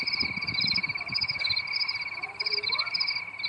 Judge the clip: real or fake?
real